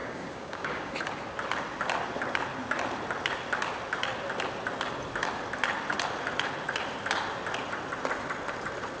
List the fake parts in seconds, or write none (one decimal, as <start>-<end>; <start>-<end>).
0.0-0.9